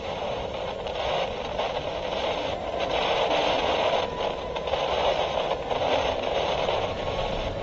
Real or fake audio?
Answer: fake